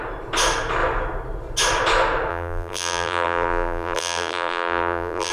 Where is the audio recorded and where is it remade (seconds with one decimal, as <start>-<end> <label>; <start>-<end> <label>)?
0.0-2.3 recorded; 2.3-5.3 remade